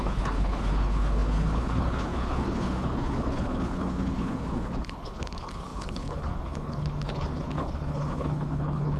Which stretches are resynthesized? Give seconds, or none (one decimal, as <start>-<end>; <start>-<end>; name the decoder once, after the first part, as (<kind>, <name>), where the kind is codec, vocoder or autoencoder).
0.0-9.0 (codec, HILCodec)